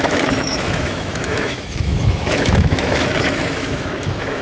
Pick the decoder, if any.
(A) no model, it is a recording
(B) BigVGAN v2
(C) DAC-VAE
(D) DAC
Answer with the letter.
C